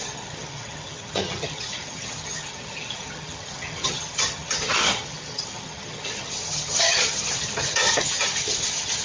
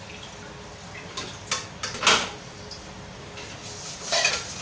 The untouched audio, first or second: second